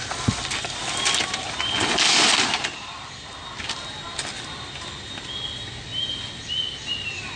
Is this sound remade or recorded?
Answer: recorded